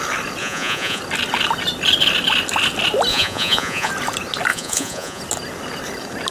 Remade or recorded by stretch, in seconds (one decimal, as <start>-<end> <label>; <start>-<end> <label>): 0.0-0.4 recorded; 0.4-1.0 remade; 1.0-3.1 recorded; 3.1-3.9 remade; 3.9-4.5 recorded; 4.5-5.2 remade; 5.2-6.3 recorded